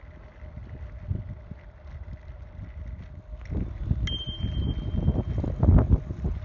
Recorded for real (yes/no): yes